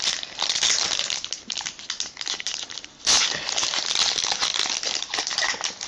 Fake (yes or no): no